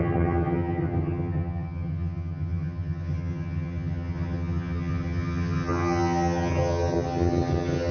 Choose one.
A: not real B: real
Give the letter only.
A